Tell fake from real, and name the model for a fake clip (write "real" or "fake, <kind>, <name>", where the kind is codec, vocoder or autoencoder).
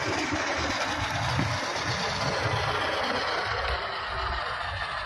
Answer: real